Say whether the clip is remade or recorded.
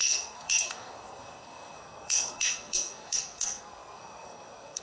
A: remade